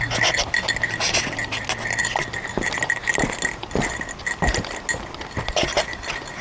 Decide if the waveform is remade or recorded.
recorded